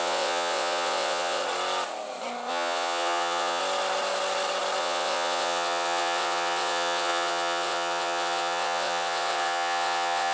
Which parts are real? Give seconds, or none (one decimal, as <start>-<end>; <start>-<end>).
1.4-2.5; 3.6-4.8